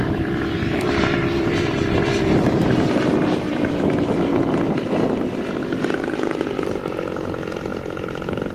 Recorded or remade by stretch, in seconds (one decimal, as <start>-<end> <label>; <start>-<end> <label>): 0.0-8.5 remade

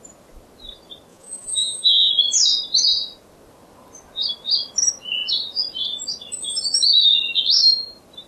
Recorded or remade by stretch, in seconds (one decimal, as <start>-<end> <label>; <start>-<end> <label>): 0.0-1.1 recorded; 1.1-2.1 remade; 2.1-8.3 recorded